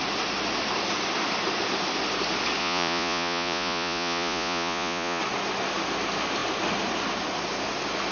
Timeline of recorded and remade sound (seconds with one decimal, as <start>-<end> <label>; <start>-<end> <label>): 0.0-2.6 recorded; 2.6-5.2 remade; 5.2-8.1 recorded